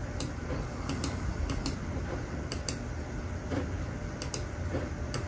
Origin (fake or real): real